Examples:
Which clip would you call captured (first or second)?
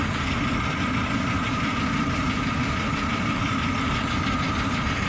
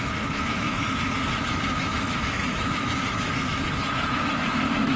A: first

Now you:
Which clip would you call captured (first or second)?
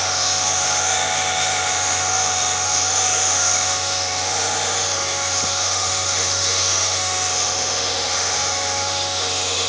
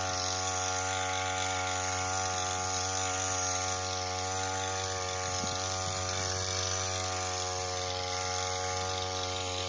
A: second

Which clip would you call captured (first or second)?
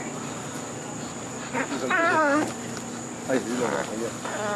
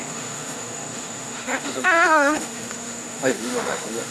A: first